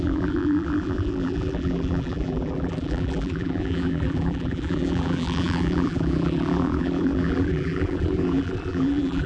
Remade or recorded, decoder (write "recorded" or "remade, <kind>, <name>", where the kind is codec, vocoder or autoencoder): remade, vocoder, BigVGAN v2